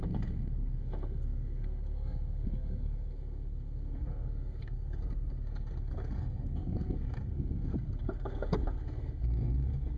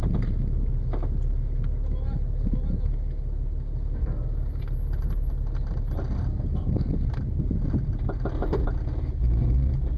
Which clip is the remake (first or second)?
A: first